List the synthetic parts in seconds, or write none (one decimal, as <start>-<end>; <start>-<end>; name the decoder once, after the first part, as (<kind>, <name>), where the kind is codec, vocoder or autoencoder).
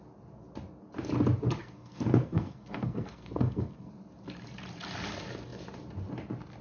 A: 1.6-3.9 (codec, SNAC)